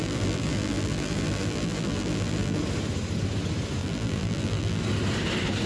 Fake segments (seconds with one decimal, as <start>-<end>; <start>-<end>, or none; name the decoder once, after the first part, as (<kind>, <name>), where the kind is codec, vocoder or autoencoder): 0.0-2.6 (vocoder, BigVGAN v2); 3.8-4.8

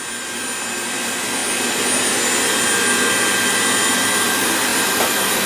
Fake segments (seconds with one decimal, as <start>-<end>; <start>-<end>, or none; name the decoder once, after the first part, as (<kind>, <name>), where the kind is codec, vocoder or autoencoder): 4.7-5.5 (vocoder, BigVGAN v2)

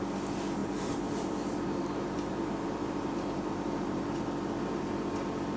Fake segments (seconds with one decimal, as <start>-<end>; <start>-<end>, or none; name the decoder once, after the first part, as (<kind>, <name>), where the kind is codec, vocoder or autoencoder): 0.6-4.0 (vocoder, BigVGAN v2)

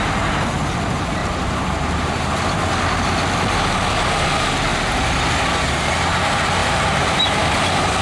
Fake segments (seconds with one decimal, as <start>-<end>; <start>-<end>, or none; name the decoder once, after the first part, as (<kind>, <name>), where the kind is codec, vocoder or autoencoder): 1.2-2.3 (vocoder, BigVGAN v2); 6.6-7.4

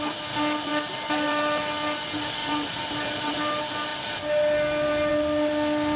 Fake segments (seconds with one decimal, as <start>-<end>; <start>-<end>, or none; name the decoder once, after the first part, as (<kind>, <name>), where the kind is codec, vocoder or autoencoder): 0.7-1.7 (vocoder, BigVGAN v2); 2.4-3.3